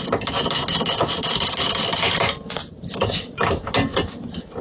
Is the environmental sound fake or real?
real